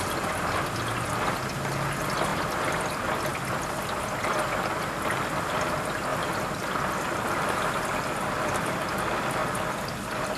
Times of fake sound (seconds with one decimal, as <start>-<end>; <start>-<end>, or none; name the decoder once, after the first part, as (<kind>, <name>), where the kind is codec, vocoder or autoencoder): 2.3-2.9 (vocoder, BigVGAN v2); 6.1-7.5; 9.4-10.4